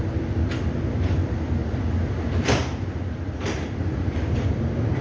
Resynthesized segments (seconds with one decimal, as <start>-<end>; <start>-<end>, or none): none